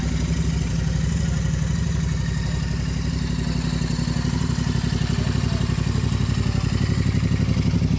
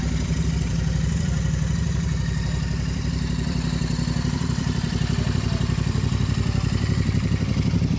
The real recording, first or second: first